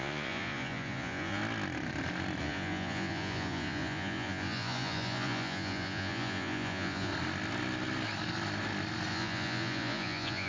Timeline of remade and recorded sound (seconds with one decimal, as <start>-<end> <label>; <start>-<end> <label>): 0.0-1.4 remade; 1.4-2.4 recorded; 2.4-7.1 remade; 7.1-9.1 recorded; 9.1-10.5 remade